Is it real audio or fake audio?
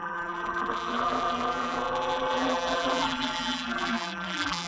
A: fake